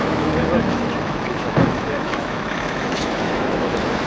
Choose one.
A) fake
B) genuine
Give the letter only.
A